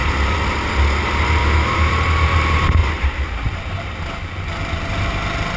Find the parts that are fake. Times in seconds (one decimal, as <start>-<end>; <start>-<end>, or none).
1.4-1.9

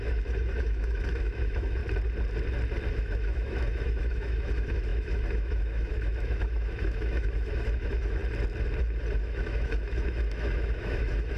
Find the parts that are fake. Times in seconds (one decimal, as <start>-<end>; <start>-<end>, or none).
0.0-1.8; 2.9-8.2; 9.2-11.4

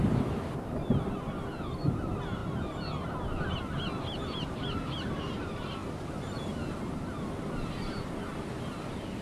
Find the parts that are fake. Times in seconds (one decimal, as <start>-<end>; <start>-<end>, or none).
none